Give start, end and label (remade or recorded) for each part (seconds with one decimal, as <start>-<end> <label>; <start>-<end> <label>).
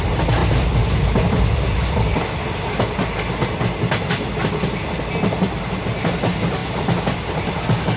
0.0-8.0 recorded